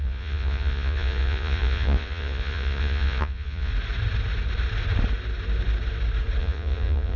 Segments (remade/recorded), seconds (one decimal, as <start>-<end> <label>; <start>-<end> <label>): 0.0-3.7 remade; 3.7-6.4 recorded; 6.4-7.2 remade